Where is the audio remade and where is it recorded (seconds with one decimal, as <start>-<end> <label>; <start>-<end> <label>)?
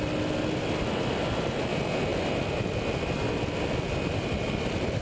0.0-5.0 recorded